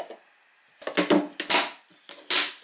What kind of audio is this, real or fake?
real